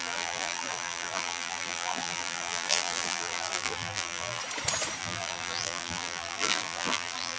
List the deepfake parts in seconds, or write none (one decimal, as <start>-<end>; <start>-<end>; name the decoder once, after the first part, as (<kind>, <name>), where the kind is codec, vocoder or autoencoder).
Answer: 0.0-4.4 (vocoder, BigVGAN v2); 5.0-7.4